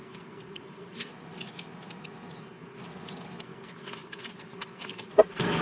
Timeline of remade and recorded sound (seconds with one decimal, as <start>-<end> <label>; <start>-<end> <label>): 0.0-1.1 remade; 1.1-2.4 recorded; 2.4-2.8 remade; 2.8-3.4 recorded; 3.4-5.6 remade